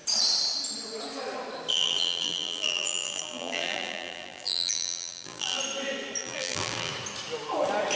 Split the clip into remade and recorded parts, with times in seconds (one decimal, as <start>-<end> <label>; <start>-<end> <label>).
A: 0.0-1.7 recorded; 1.7-5.6 remade; 5.6-6.2 recorded; 6.2-6.9 remade; 6.9-8.0 recorded